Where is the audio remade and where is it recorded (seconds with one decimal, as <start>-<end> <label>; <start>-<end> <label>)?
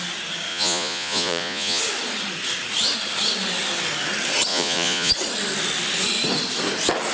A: 0.0-0.5 recorded; 0.5-1.8 remade; 1.8-4.5 recorded; 4.5-5.1 remade; 5.1-7.1 recorded